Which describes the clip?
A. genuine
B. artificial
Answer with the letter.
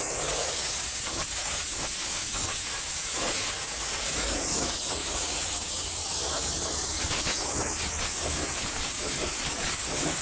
B